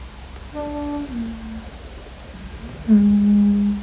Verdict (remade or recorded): recorded